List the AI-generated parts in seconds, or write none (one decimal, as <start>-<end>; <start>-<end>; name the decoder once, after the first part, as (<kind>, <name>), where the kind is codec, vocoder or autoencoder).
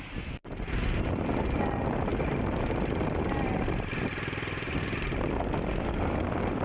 none